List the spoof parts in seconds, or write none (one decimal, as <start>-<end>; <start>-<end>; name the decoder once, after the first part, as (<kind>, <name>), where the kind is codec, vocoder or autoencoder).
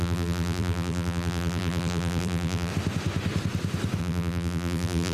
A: 0.0-2.7 (vocoder, BigVGAN v2); 4.0-5.1